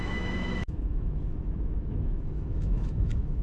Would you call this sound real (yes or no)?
no